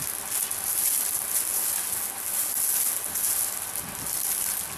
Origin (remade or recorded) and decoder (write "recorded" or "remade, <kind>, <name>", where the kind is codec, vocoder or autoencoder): recorded